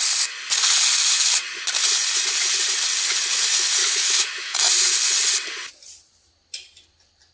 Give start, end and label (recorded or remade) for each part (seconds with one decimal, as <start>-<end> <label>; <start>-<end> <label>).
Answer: 0.0-3.8 recorded; 3.8-4.7 remade; 4.7-7.3 recorded